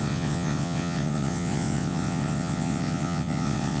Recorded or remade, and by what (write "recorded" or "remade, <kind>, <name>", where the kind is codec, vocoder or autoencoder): remade, vocoder, WaveNeXt